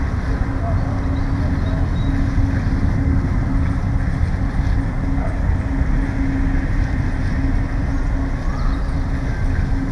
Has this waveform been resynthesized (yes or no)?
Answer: no